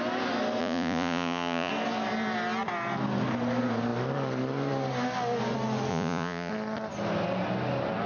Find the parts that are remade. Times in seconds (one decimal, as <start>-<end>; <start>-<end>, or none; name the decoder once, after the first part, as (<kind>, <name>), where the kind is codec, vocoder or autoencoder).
0.6-1.7 (vocoder, Vocos); 5.9-6.5